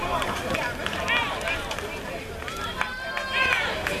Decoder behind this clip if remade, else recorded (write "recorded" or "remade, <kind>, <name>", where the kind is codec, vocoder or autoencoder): recorded